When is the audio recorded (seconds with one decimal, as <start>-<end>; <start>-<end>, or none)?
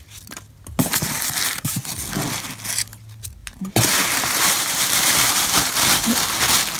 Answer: 0.0-3.4; 6.1-6.8